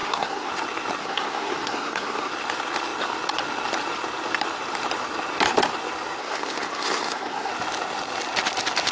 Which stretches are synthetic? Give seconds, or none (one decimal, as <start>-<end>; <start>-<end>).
0.0-0.5; 1.0-2.3; 6.2-7.5